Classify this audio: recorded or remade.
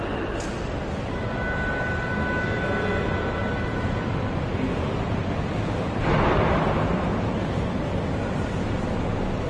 recorded